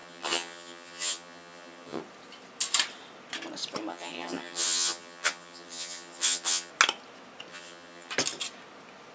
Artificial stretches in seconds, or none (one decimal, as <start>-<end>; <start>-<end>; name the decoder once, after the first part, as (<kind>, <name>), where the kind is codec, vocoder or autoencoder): 0.0-2.0 (vocoder, HiFi-GAN); 3.9-6.7; 7.5-8.1